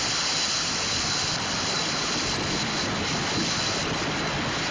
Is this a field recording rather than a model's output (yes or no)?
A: yes